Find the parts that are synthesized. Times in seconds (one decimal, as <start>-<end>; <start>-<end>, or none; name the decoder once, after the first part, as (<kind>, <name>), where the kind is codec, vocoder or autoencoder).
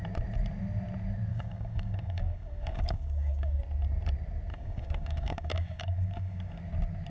1.3-3.6 (codec, DAC); 4.5-6.6